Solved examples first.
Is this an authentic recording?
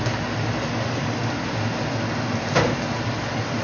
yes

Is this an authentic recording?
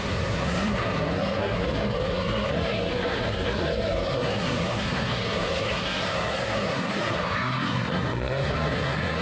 no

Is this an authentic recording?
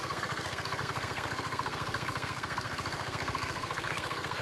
no